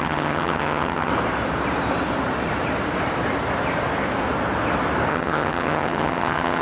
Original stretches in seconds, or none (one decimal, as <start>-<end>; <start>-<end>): 1.1-5.1